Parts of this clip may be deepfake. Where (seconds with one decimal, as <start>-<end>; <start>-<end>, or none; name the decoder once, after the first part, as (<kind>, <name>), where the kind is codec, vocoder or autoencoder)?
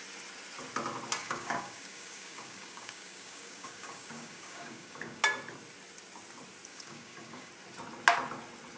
1.2-5.2 (codec, DAC); 6.7-7.5